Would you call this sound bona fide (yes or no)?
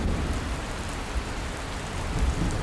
yes